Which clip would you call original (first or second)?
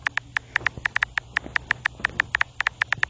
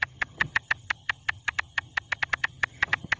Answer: first